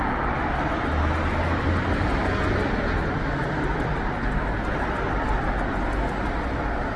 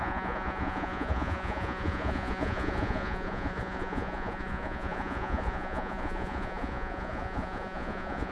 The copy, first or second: second